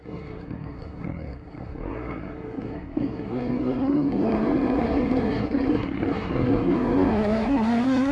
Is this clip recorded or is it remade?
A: remade